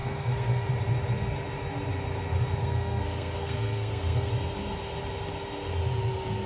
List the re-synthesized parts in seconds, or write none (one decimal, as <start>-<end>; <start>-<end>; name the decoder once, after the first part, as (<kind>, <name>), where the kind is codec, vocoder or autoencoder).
0.0-0.7 (codec, SNAC); 2.6-4.3